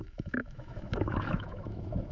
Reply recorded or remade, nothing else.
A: remade